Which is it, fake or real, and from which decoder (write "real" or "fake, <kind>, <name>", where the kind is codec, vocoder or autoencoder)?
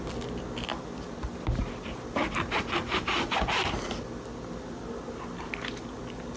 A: real